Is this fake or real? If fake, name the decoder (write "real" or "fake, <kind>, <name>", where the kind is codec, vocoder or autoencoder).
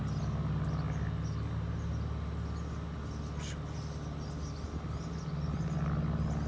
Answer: real